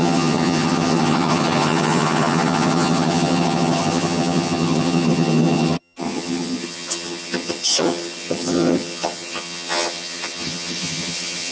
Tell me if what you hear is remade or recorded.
remade